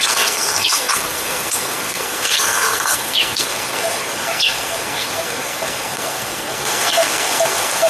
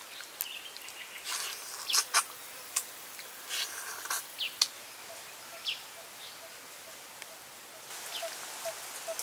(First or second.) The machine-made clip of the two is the first